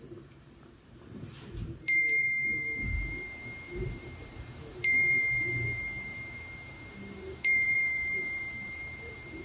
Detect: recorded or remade remade